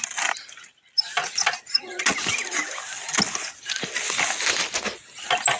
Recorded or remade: recorded